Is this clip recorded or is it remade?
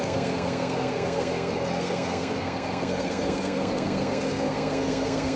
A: remade